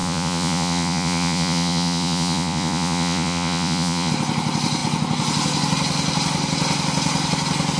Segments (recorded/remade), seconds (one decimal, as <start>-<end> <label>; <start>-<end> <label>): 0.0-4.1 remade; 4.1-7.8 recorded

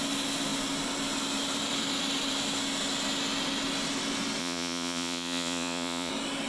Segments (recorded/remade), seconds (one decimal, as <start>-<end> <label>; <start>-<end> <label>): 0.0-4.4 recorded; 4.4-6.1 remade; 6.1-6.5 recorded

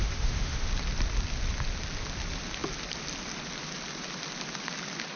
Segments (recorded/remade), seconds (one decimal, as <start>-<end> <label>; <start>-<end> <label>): 0.0-0.7 remade; 0.7-5.2 recorded

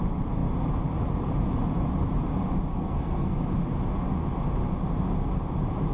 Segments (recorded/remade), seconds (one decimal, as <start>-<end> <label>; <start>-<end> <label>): 0.0-2.7 recorded; 2.7-3.4 remade; 3.4-5.9 recorded

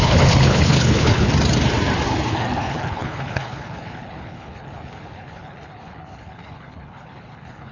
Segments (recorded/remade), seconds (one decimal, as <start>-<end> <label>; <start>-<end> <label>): 0.0-1.3 remade; 1.3-2.3 recorded; 2.3-7.7 remade

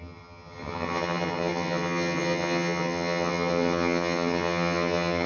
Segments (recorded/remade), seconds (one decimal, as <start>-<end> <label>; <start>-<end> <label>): 0.0-5.3 remade

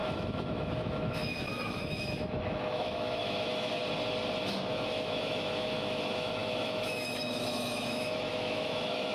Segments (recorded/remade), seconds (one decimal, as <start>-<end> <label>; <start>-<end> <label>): 0.0-3.8 remade; 3.8-4.7 recorded; 4.7-9.1 remade

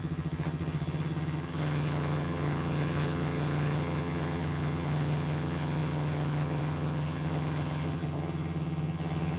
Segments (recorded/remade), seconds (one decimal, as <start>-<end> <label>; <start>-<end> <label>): 0.0-9.4 remade